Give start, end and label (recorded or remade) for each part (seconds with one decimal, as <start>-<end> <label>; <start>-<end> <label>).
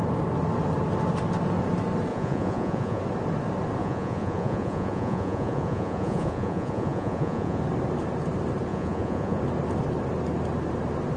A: 0.0-2.1 recorded; 2.1-3.0 remade; 3.0-3.8 recorded; 3.8-7.6 remade; 7.6-8.7 recorded; 8.7-9.4 remade; 9.4-11.2 recorded